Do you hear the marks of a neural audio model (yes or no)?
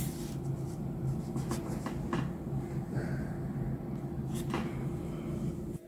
no